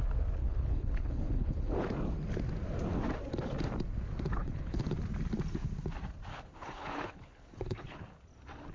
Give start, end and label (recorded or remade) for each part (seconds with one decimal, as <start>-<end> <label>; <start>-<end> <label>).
0.0-0.4 recorded; 0.4-1.7 remade; 1.7-4.4 recorded; 4.4-4.9 remade; 4.9-6.3 recorded; 6.3-8.0 remade; 8.0-8.7 recorded